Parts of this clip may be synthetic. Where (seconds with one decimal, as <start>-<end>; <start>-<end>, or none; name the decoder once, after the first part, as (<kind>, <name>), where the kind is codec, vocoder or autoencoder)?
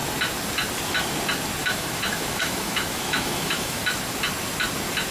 1.6-3.8 (autoencoder, DAC-VAE)